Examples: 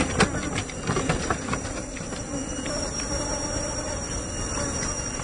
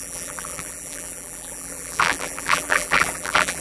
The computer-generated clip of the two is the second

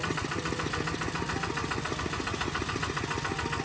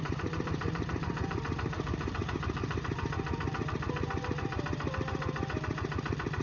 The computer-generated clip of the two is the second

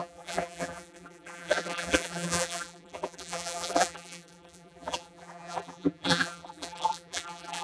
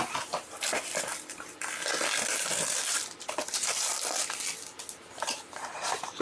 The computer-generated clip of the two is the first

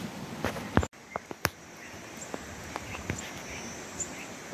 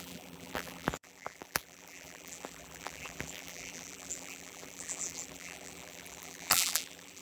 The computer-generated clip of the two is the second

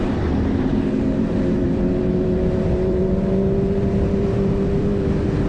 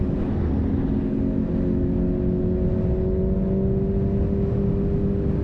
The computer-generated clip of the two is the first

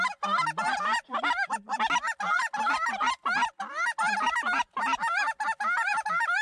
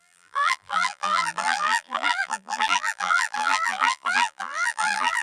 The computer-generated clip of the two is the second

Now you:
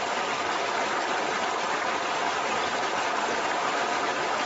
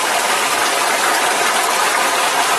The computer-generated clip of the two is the second